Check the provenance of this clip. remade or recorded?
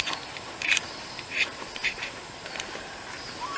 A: remade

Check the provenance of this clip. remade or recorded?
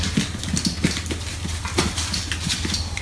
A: remade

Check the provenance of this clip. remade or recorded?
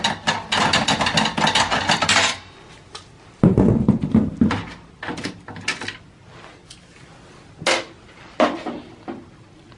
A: recorded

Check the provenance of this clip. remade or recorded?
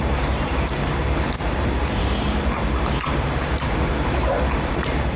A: remade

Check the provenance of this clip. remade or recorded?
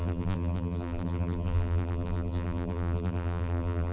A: remade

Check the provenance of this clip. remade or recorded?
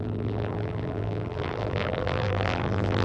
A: remade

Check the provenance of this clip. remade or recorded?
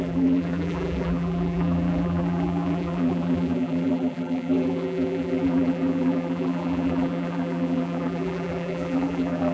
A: remade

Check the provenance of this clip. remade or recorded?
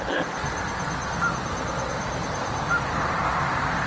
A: recorded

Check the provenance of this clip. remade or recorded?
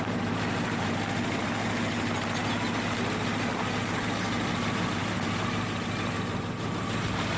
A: remade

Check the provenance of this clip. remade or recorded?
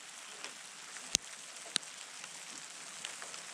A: recorded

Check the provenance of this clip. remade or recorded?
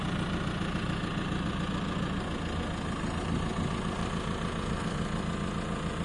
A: recorded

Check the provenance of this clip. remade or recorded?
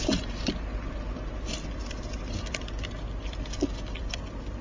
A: remade